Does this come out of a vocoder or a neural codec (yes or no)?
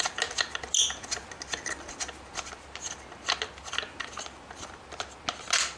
no